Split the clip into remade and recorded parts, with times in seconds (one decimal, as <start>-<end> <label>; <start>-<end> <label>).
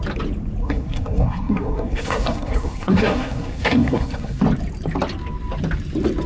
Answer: 0.0-0.6 recorded; 0.6-4.4 remade; 4.4-6.3 recorded